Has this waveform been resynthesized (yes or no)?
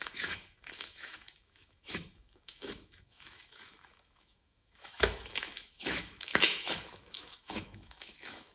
yes